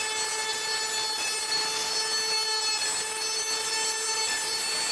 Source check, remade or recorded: recorded